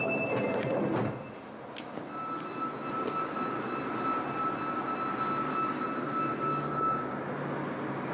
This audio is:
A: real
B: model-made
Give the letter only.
A